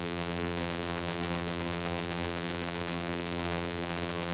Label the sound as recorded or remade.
remade